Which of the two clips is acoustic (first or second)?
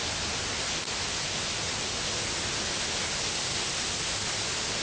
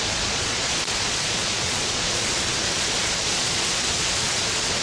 first